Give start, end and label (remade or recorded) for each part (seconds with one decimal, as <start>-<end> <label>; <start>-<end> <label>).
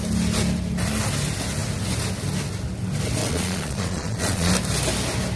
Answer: 0.0-3.2 recorded; 3.2-4.5 remade; 4.5-5.4 recorded